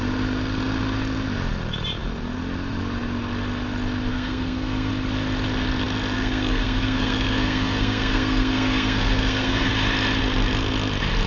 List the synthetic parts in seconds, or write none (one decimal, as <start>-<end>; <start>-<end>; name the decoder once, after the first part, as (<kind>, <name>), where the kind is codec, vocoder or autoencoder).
4.1-4.9 (codec, SNAC); 6.1-9.7